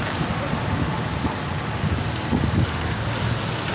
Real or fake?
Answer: real